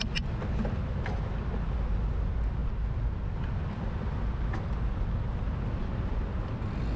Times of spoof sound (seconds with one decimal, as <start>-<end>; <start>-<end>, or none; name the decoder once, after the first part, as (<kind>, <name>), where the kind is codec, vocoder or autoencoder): none